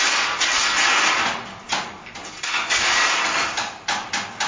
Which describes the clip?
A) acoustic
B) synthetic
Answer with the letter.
A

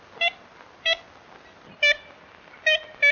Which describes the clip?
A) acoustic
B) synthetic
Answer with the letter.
A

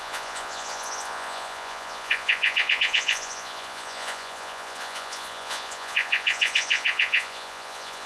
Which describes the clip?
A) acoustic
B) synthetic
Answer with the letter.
B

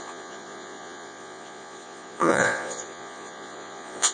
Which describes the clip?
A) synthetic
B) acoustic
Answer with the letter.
A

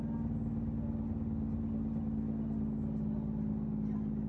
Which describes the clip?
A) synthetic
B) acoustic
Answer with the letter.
B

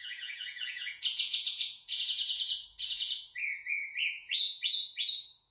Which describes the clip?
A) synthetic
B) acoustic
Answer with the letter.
A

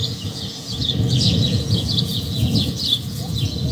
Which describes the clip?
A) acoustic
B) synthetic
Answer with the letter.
B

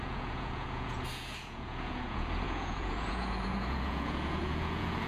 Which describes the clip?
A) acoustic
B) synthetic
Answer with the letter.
B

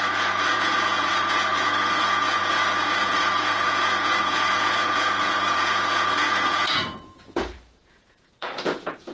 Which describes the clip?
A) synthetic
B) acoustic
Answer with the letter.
A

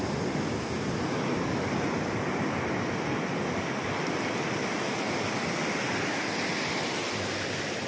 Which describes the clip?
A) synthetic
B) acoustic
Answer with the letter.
B